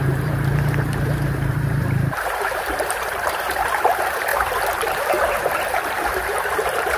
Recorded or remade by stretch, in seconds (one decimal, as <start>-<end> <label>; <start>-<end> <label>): 0.0-7.0 remade